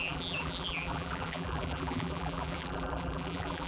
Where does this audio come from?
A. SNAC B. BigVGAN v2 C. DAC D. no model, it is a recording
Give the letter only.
B